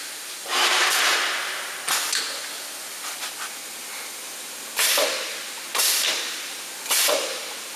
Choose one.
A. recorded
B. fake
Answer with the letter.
A